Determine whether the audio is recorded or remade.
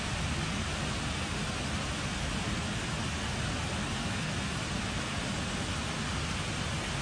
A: recorded